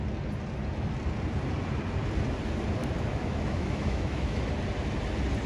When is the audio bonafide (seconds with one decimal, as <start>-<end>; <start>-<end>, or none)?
0.0-2.8; 4.4-5.5